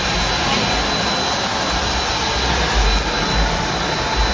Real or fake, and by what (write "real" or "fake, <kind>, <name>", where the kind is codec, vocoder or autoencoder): real